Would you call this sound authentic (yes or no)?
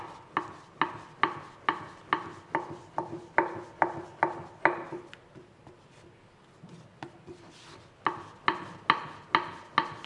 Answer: yes